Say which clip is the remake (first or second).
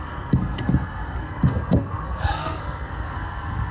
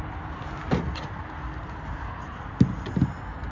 first